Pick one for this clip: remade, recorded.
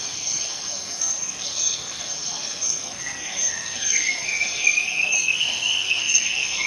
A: remade